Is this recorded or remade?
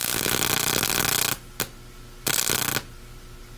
recorded